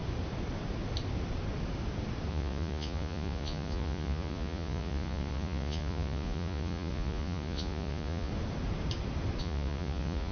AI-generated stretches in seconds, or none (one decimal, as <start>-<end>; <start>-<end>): 2.3-8.3; 9.4-10.3